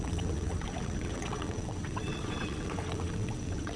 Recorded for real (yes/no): no